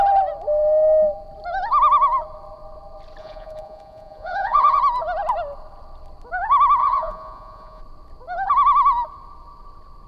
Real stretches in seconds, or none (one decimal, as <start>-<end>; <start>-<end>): 0.0-3.2; 4.8-6.8; 7.8-10.1